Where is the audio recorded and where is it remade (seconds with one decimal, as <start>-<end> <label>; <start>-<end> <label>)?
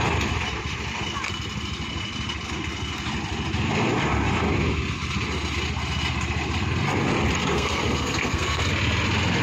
0.0-7.5 recorded; 7.5-8.6 remade; 8.6-9.4 recorded